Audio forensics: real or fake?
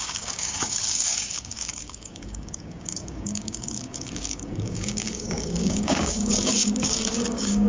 fake